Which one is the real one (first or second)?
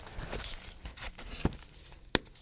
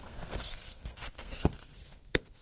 first